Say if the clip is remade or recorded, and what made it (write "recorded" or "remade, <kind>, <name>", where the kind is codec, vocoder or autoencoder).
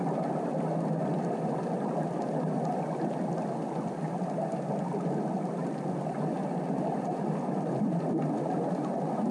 recorded